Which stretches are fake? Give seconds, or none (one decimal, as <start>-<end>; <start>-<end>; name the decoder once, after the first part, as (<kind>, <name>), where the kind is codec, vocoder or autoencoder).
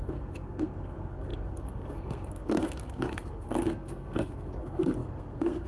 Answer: 0.0-5.7 (codec, SNAC)